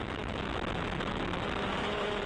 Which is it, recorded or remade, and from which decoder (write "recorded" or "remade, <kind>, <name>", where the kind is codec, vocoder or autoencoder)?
remade, autoencoder, DAC-VAE